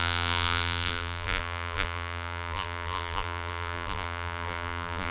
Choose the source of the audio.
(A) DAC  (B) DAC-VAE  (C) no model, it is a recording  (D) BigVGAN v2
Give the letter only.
D